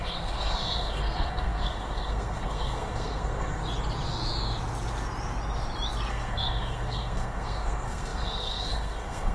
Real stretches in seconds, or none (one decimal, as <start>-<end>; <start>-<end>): 3.6-6.1